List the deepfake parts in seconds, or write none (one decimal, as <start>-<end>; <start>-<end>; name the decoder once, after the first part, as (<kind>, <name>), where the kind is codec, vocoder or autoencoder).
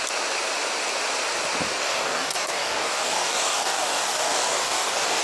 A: 1.8-5.2 (codec, DAC)